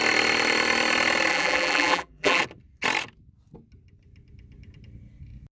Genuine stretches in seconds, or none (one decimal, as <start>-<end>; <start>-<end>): 0.0-1.3; 2.4-5.5